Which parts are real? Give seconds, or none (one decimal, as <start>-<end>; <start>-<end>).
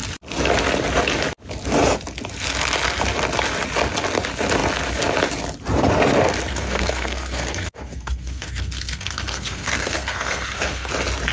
0.0-6.5; 10.9-11.3